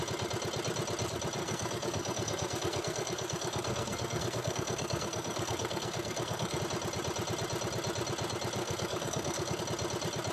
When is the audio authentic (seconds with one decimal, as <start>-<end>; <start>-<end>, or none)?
0.0-1.4; 6.6-8.6; 9.6-10.3